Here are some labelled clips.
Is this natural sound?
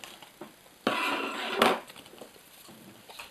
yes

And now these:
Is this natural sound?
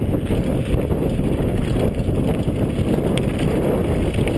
yes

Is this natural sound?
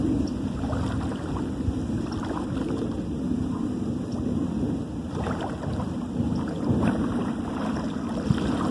no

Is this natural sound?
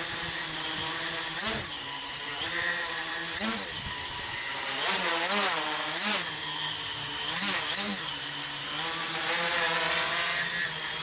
no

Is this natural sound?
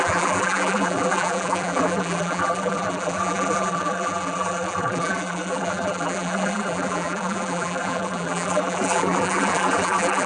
no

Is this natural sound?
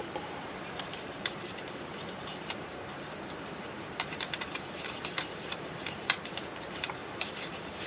no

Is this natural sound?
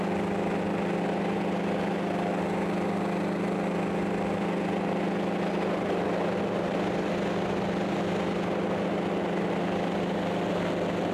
yes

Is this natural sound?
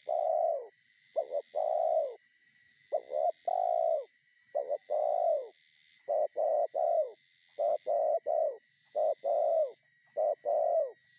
yes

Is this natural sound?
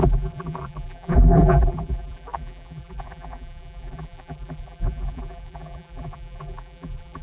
no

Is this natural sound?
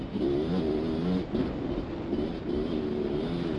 yes